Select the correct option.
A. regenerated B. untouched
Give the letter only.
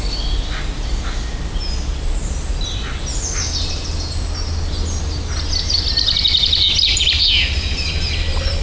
B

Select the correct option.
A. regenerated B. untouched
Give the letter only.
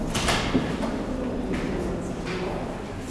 B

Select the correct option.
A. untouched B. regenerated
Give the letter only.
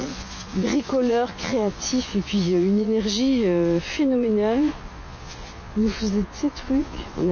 B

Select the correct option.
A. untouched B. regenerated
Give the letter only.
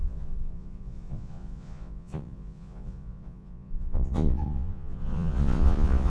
B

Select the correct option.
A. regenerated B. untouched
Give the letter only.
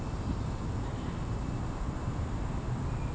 B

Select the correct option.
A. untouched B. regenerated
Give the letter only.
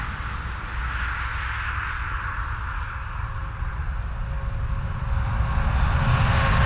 A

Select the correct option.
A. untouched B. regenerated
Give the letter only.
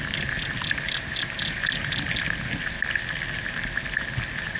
A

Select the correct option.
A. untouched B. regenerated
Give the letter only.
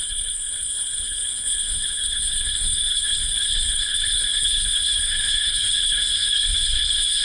B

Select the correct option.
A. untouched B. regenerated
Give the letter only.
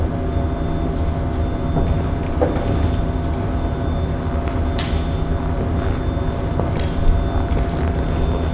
A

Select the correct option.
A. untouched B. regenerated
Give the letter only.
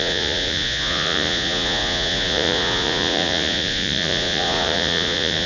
B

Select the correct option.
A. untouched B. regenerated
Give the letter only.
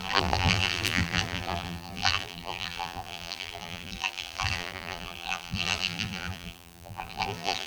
B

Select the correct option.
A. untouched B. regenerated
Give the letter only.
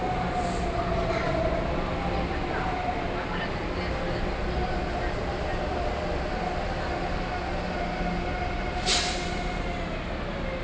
A